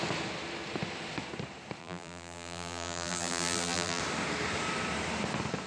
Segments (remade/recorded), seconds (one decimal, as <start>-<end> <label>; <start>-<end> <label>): 0.0-1.8 recorded; 1.8-4.0 remade; 4.0-5.7 recorded